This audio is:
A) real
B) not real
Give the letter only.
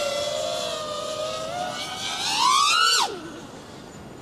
A